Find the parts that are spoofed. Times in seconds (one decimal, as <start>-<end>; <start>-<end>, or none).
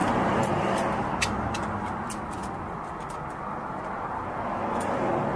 none